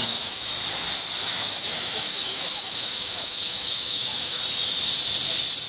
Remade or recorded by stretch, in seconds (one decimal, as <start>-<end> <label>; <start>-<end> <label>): 0.0-0.5 remade; 0.5-1.2 recorded; 1.2-4.4 remade; 4.4-5.7 recorded